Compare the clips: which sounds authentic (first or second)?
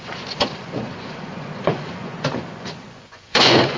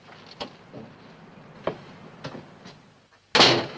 second